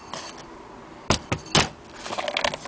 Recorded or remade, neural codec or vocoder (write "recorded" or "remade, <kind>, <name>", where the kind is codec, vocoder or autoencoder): recorded